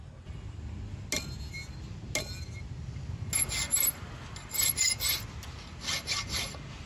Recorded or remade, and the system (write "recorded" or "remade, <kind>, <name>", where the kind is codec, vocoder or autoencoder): recorded